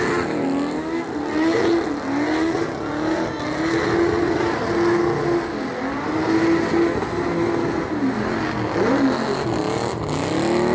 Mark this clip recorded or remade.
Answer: recorded